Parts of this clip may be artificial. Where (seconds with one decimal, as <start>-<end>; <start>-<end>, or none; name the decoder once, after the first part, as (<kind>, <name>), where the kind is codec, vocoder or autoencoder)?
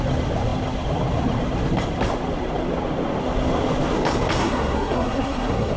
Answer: 4.4-5.8 (codec, SNAC)